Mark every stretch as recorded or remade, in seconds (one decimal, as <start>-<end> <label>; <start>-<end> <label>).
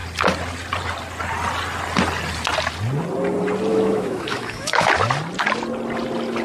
0.0-3.7 recorded; 3.7-4.9 remade; 4.9-6.4 recorded